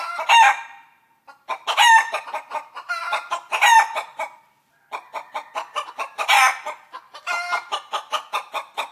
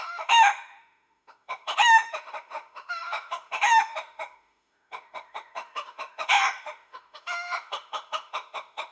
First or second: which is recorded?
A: first